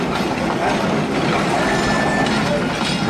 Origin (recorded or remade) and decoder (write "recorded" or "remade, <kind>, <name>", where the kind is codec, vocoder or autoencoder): recorded